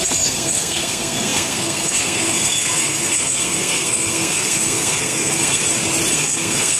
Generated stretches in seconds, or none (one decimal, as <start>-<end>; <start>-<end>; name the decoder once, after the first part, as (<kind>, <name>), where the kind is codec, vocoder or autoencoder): 0.0-5.6 (codec, SNAC); 6.1-6.8